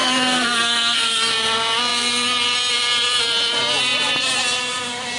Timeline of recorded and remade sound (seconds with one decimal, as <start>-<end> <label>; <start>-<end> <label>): 0.0-1.3 remade; 1.3-5.2 recorded